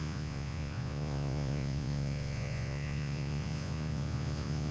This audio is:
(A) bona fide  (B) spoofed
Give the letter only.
B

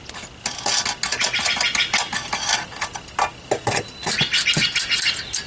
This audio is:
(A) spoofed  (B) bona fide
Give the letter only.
B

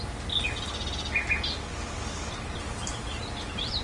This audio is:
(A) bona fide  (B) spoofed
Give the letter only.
A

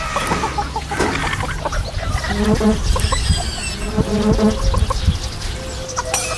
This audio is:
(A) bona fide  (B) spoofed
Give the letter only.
A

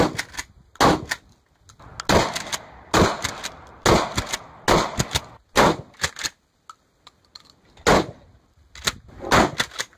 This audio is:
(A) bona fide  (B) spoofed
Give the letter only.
A